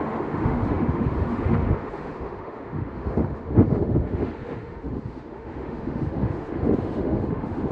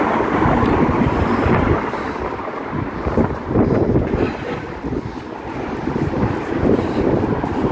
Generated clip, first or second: first